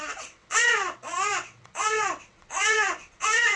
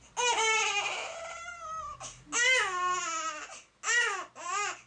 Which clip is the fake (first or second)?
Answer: first